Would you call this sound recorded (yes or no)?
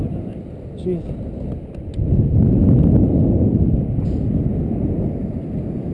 yes